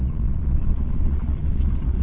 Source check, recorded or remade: remade